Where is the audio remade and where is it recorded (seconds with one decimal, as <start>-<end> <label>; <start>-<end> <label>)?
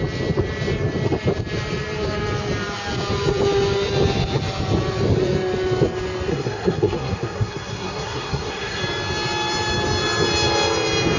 0.0-6.3 recorded; 6.3-8.8 remade; 8.8-11.2 recorded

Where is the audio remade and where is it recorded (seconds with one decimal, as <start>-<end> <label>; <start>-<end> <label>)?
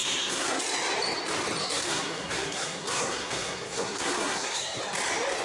0.0-0.6 remade; 0.6-1.6 recorded; 1.6-4.8 remade; 4.8-5.4 recorded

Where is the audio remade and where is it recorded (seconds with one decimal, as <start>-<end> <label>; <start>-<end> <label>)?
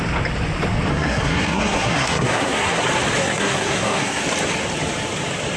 0.0-0.9 recorded; 0.9-2.8 remade; 2.8-3.2 recorded; 3.2-4.2 remade; 4.2-5.6 recorded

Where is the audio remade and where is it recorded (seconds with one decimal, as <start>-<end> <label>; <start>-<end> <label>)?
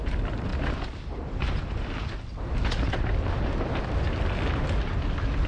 0.0-5.5 recorded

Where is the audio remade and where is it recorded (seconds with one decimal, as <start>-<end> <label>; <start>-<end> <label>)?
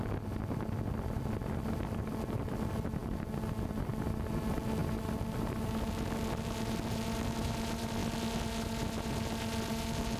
0.0-10.2 recorded